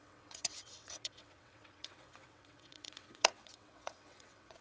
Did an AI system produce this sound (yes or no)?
yes